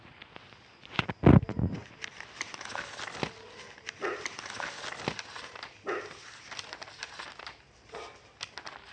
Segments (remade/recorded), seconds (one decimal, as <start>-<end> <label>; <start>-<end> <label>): 0.0-8.9 recorded